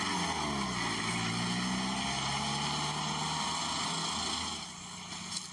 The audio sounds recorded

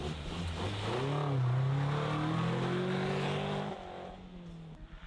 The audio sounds recorded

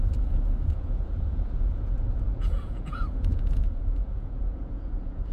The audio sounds remade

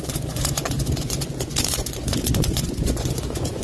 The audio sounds remade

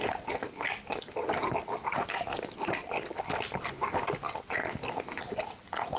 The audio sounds recorded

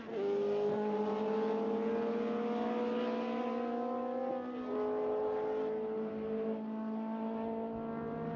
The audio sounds recorded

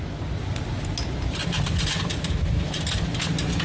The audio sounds recorded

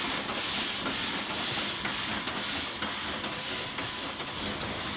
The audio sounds recorded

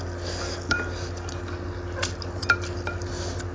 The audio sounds recorded